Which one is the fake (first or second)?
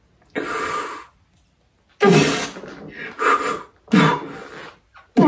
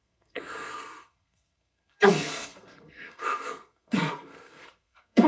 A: second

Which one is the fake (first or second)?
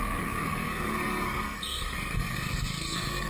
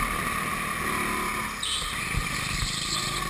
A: first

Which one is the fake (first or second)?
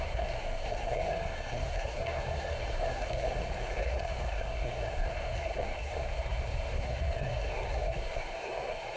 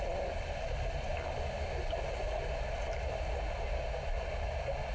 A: first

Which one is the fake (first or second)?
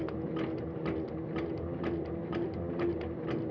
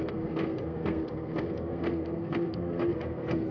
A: second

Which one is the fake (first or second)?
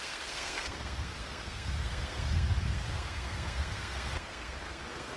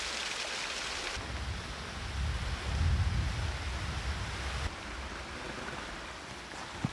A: first